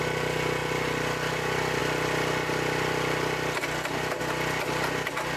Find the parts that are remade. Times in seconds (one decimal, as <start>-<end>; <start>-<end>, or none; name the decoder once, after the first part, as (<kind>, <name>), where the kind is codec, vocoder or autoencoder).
none